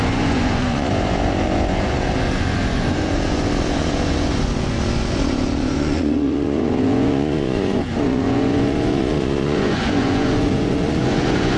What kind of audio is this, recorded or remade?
remade